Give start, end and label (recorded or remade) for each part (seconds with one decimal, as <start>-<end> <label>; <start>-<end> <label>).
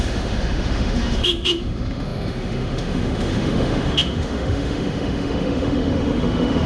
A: 0.0-6.7 remade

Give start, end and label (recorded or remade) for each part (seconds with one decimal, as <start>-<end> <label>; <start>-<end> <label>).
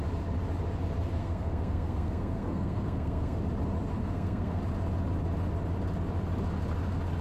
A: 0.0-1.2 recorded; 1.2-3.4 remade; 3.4-4.0 recorded; 4.0-4.6 remade; 4.6-7.2 recorded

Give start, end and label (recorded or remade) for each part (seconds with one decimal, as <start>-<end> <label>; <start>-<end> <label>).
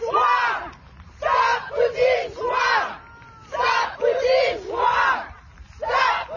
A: 0.0-6.4 recorded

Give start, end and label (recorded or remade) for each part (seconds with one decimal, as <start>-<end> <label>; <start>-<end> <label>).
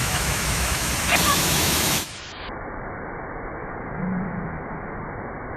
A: 0.0-0.9 remade; 0.9-1.3 recorded; 1.3-2.4 remade; 2.4-3.6 recorded; 3.6-5.0 remade; 5.0-5.6 recorded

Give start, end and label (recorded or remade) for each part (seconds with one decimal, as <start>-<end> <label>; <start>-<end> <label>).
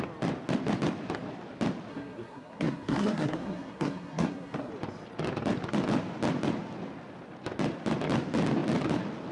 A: 0.0-1.9 recorded; 1.9-4.7 remade; 4.7-9.3 recorded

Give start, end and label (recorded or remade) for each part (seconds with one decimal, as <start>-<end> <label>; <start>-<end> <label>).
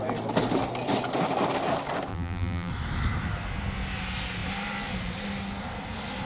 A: 0.0-2.1 recorded; 2.1-2.7 remade; 2.7-6.2 recorded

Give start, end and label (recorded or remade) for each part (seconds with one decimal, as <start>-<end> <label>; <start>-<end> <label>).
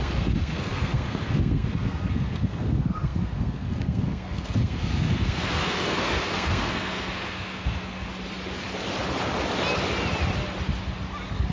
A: 0.0-8.1 remade; 8.1-11.5 recorded